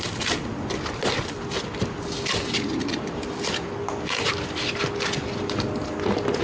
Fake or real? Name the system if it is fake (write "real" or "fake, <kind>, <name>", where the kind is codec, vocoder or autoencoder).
real